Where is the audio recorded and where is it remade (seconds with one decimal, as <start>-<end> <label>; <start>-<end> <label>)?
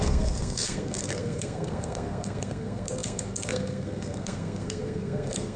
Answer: 0.0-5.6 remade